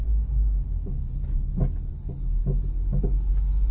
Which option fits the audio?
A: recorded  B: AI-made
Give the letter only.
A